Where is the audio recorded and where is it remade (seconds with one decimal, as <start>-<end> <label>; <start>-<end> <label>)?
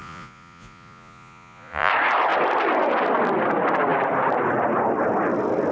0.0-1.9 remade; 1.9-5.7 recorded